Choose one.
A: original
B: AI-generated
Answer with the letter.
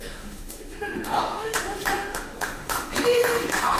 B